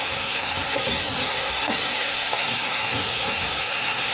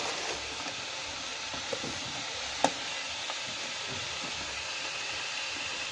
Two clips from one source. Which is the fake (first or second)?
first